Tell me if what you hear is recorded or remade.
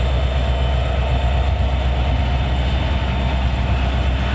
recorded